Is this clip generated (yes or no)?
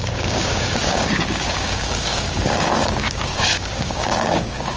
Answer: yes